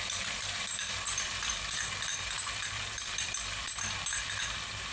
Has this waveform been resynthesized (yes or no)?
yes